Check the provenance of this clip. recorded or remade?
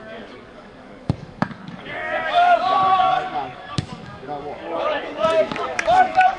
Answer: remade